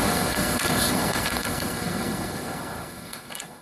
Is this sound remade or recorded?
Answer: remade